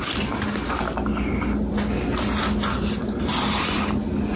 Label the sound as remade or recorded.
recorded